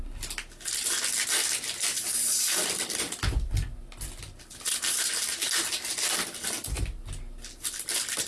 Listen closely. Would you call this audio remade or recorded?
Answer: recorded